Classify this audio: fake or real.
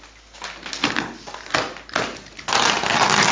real